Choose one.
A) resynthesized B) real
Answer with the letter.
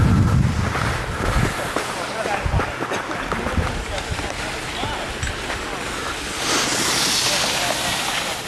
B